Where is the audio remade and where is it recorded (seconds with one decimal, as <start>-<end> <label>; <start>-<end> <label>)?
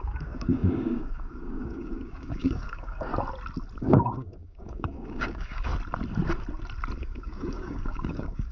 0.0-3.1 remade; 3.1-3.8 recorded; 3.8-5.7 remade; 5.7-7.0 recorded; 7.0-8.5 remade